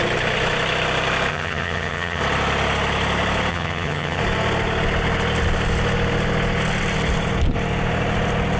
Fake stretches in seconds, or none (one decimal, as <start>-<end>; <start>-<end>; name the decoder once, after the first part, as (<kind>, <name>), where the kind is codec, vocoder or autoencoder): 1.3-2.2 (vocoder, HiFi-GAN); 3.5-4.2